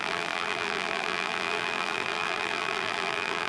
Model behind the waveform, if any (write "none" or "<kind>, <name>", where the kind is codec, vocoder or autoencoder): vocoder, BigVGAN v2